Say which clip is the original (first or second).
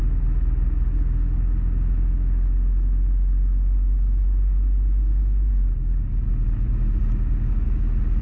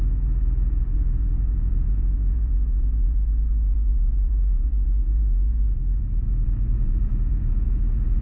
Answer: first